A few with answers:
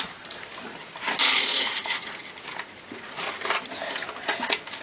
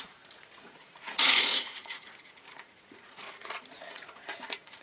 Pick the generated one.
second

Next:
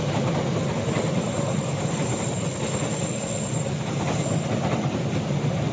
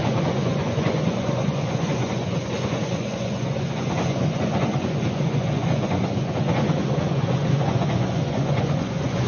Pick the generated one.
second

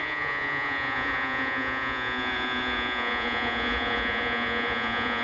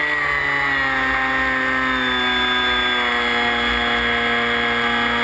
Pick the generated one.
first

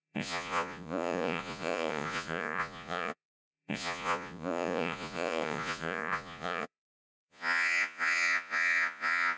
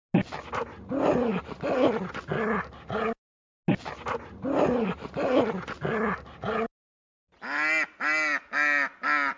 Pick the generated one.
first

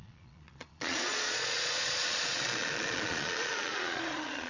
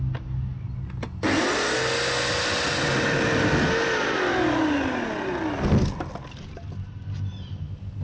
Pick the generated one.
first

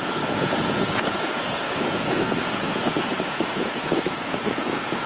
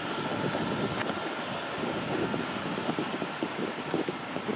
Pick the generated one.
first